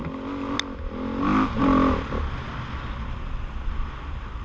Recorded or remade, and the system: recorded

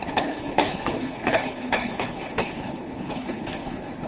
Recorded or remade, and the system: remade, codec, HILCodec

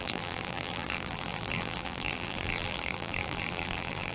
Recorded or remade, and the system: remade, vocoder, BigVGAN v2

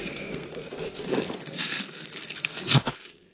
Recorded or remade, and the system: remade, codec, SNAC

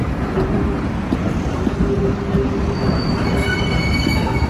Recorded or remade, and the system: recorded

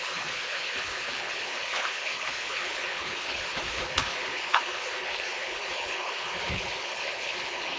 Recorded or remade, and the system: remade, codec, HILCodec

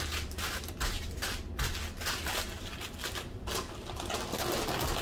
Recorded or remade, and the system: recorded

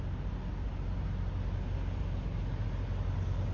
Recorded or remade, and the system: recorded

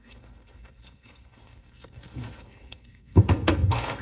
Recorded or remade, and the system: remade, codec, SNAC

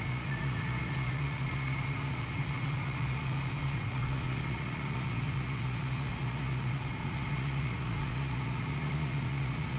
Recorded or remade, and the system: remade, vocoder, Vocos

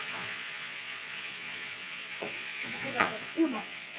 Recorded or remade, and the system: remade, vocoder, Vocos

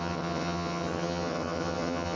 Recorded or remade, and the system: remade, vocoder, HiFi-GAN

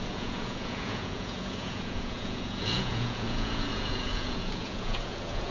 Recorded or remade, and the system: remade, vocoder, Vocos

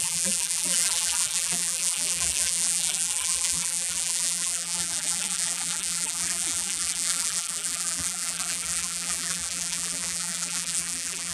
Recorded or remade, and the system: remade, vocoder, BigVGAN v2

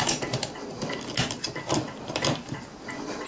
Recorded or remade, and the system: recorded